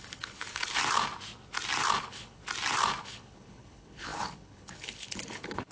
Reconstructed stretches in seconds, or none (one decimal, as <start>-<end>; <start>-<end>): 0.0-0.8; 2.0-2.4; 3.0-5.7